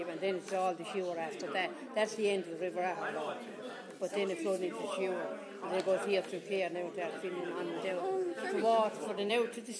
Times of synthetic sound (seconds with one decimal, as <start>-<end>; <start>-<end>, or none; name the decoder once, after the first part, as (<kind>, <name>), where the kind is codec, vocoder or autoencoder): 7.9-9.3 (autoencoder, DAC-VAE)